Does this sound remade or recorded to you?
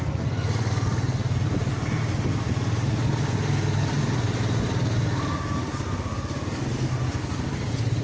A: recorded